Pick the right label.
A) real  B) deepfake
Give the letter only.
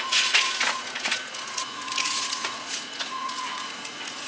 B